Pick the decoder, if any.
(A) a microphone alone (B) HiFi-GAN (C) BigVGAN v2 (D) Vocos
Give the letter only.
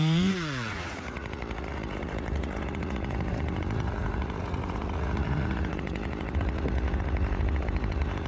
D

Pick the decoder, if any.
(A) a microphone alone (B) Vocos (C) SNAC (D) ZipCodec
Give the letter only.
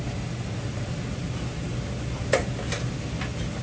A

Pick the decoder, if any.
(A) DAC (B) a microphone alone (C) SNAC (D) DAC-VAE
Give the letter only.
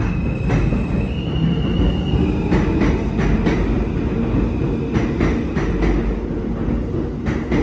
B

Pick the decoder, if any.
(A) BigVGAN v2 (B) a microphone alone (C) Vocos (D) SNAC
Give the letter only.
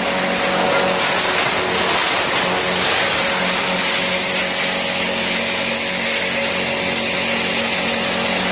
B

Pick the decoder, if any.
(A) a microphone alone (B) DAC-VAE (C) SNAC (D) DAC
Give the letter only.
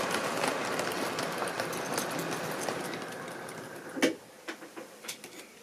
A